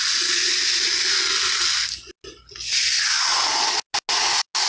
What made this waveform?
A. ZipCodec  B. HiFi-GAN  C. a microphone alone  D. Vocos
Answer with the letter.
C